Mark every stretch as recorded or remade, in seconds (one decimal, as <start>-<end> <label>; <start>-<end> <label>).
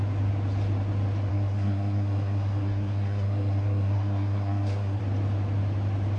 0.0-1.3 recorded; 1.3-5.0 remade; 5.0-6.2 recorded